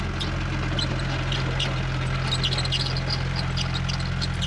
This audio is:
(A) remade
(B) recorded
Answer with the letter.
B